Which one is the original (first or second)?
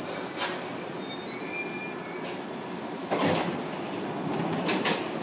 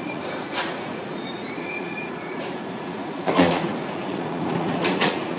first